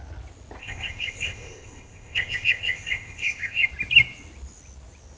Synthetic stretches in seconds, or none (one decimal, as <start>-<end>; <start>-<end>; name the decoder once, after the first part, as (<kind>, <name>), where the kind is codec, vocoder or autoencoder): 0.6-3.7 (codec, ZipCodec)